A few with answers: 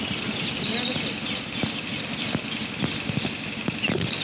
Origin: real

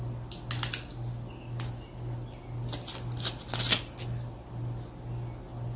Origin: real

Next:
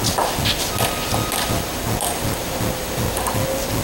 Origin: real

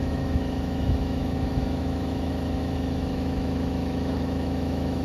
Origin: fake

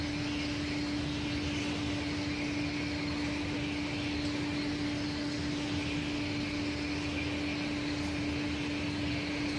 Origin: real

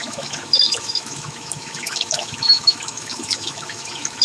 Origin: fake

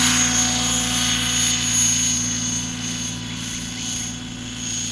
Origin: real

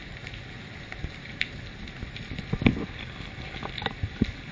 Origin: real